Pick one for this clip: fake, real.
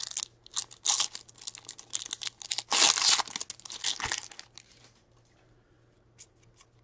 real